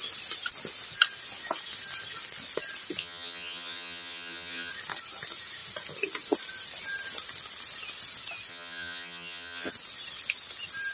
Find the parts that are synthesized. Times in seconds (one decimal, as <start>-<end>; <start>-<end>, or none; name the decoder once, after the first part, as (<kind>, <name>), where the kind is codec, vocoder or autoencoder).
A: 3.0-4.7 (vocoder, HiFi-GAN); 8.5-9.7